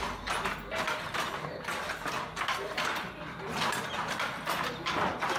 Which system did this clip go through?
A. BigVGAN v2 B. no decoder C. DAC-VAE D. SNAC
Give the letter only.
B